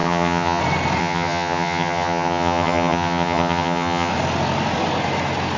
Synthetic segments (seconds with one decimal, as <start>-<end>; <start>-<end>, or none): 0.0-0.6; 1.0-4.1

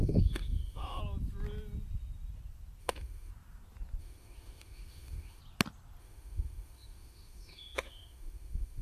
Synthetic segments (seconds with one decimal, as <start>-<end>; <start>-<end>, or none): 0.0-1.0; 2.8-3.3; 4.0-5.4; 6.0-8.8